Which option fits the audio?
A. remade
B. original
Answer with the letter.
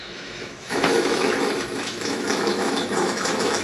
A